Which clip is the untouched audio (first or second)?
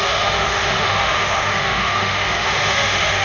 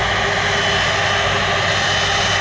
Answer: second